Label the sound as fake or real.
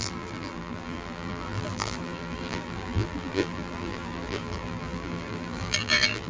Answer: fake